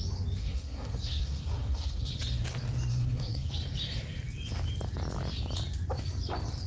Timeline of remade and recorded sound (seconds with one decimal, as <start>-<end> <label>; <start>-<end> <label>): 0.0-0.4 recorded; 0.4-2.1 remade; 2.1-2.9 recorded; 2.9-3.5 remade; 3.5-6.7 recorded